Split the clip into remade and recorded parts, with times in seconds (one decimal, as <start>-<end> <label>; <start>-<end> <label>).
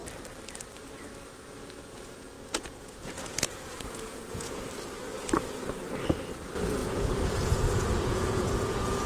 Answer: 0.0-1.6 recorded; 1.6-4.6 remade; 4.6-6.8 recorded; 6.8-9.1 remade